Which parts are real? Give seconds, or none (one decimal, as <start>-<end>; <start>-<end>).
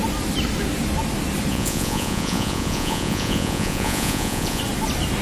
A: 0.0-1.5; 4.6-5.2